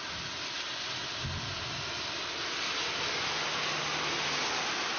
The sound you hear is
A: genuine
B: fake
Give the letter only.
A